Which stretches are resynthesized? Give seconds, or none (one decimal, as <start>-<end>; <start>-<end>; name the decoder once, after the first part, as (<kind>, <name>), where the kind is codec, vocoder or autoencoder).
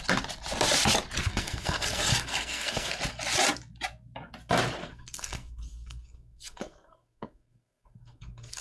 1.2-3.0 (codec, SNAC); 4.8-8.6